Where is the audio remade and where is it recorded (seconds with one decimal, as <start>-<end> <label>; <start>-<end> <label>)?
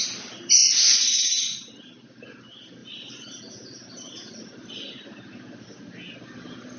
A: 0.0-2.8 recorded; 2.8-3.4 remade; 3.4-6.8 recorded